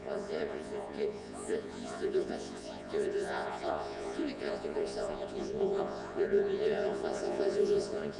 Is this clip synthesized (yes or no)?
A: yes